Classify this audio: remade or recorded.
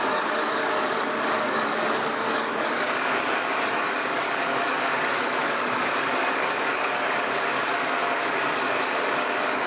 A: remade